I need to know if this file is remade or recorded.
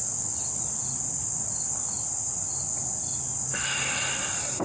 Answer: recorded